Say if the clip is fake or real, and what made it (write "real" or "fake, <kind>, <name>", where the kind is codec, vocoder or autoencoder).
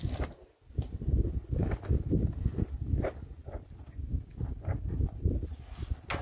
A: real